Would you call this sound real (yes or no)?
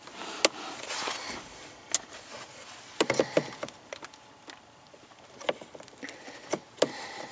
yes